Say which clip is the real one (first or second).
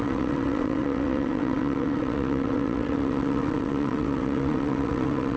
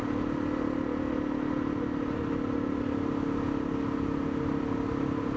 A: second